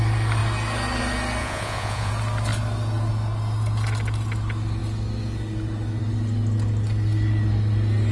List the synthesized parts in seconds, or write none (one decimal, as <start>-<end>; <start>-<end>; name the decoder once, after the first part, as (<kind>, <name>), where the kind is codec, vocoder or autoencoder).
1.4-2.1 (vocoder, Vocos)